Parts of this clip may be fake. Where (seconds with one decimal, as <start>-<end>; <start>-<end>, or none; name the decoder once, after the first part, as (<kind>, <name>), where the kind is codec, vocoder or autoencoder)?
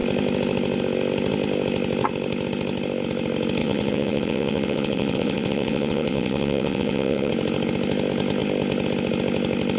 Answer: 3.6-7.3 (vocoder, WaveNeXt)